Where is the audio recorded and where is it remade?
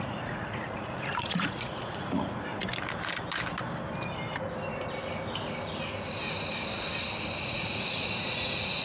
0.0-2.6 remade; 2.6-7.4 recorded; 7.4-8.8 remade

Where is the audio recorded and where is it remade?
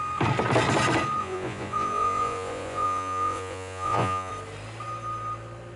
0.0-1.2 recorded; 1.2-4.3 remade; 4.3-5.8 recorded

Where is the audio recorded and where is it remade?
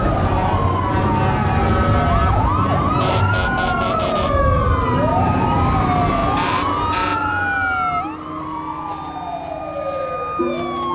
0.0-10.9 recorded